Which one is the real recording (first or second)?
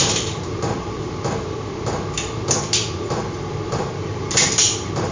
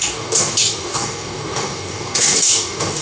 first